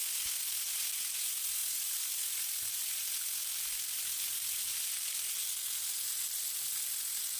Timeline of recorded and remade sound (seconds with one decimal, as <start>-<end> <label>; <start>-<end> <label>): 0.0-7.4 recorded